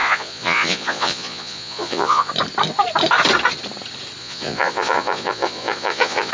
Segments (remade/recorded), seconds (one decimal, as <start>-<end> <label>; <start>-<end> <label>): 0.0-2.3 remade; 2.3-4.2 recorded; 4.2-6.3 remade